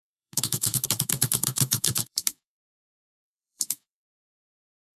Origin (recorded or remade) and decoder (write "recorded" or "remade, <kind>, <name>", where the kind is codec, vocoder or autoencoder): remade, codec, DAC